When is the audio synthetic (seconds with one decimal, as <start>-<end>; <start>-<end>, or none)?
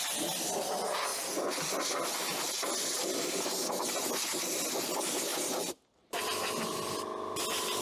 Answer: none